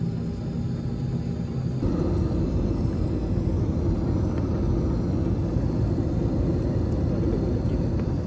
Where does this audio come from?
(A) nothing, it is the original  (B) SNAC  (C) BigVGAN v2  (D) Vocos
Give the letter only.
A